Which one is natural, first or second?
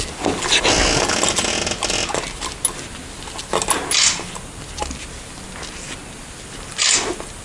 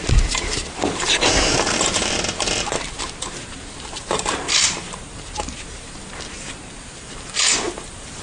first